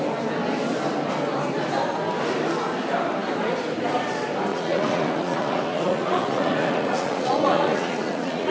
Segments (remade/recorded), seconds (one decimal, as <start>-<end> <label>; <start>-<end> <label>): 0.0-4.5 recorded; 4.5-8.5 remade